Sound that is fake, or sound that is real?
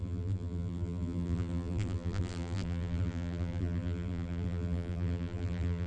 fake